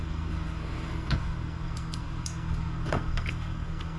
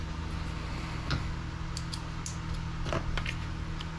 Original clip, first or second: second